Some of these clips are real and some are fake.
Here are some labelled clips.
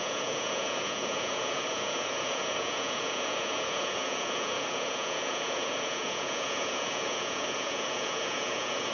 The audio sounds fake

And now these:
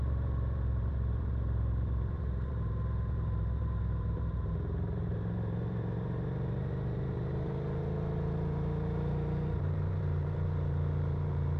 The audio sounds fake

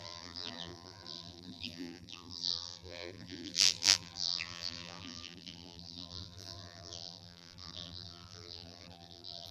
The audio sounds fake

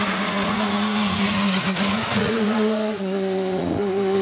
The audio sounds fake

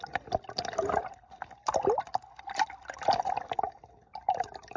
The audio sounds real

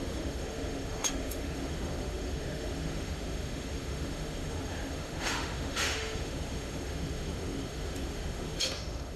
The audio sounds fake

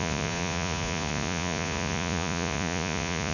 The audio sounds fake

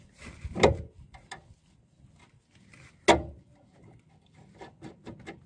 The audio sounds real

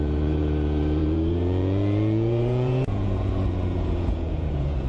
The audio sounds fake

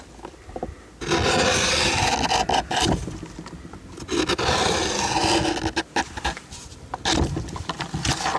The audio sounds real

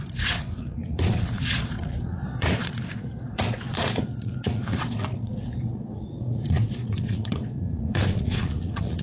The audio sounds fake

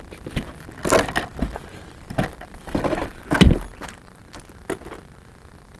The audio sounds real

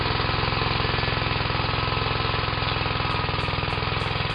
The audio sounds real